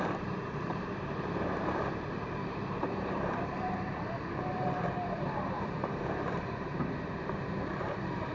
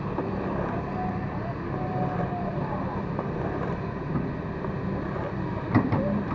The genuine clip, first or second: second